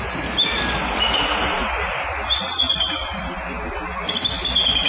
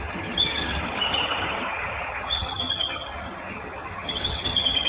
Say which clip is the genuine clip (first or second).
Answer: first